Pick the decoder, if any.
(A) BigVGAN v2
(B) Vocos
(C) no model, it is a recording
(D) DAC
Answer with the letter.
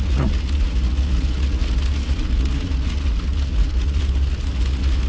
B